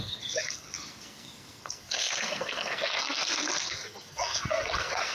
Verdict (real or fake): fake